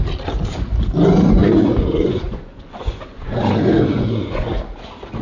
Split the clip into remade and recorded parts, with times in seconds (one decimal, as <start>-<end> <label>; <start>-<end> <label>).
0.0-1.4 recorded; 1.4-4.5 remade; 4.5-5.2 recorded